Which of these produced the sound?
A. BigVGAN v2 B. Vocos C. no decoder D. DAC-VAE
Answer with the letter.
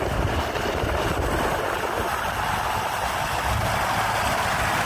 C